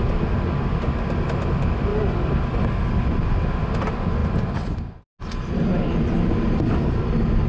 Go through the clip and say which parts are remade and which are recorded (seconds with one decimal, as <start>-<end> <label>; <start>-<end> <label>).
0.0-7.5 recorded